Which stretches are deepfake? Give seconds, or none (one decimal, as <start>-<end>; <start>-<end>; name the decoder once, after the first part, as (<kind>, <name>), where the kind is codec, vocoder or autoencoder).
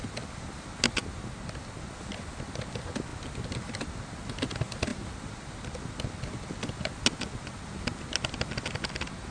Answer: none